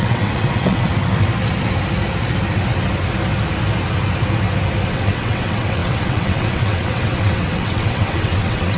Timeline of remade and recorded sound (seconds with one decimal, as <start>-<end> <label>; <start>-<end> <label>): 0.0-0.9 remade; 0.9-4.9 recorded; 4.9-8.8 remade